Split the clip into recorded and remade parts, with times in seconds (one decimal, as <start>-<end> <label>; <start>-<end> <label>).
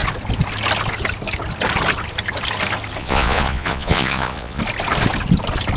0.0-3.0 recorded; 3.0-4.6 remade; 4.6-5.8 recorded